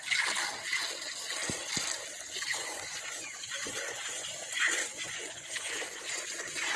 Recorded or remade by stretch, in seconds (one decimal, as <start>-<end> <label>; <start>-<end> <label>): 0.0-2.5 recorded; 2.5-6.8 remade